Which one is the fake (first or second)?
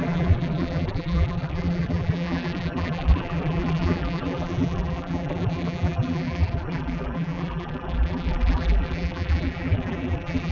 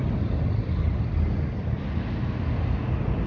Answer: first